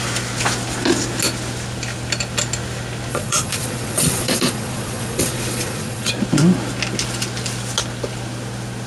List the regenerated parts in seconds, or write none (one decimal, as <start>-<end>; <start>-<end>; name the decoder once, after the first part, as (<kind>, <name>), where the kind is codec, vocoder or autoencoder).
3.1-6.1 (vocoder, Vocos)